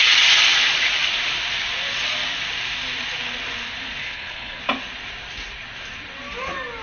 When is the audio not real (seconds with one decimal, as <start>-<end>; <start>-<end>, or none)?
4.0-4.6